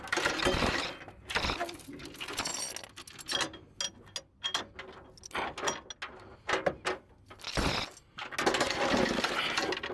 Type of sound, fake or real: real